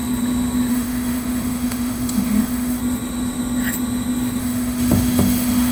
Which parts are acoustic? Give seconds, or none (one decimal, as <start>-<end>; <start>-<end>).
0.0-0.7; 2.8-4.4